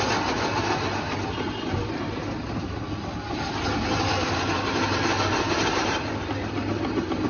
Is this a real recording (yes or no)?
yes